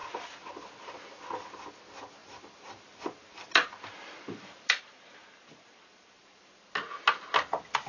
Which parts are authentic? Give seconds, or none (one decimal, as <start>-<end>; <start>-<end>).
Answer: 0.0-2.2; 6.7-7.9